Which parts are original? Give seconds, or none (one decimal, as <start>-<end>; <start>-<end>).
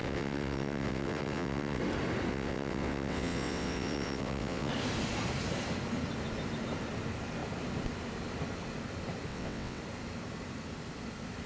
1.8-2.3; 4.7-9.3; 9.8-11.5